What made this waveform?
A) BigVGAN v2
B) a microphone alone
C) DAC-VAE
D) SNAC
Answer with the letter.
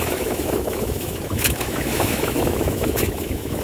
C